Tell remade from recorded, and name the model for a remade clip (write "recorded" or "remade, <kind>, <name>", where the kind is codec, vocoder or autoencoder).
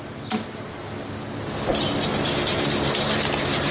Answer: recorded